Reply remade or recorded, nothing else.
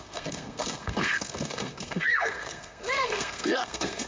remade